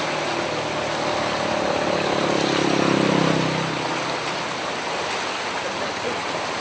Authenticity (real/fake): real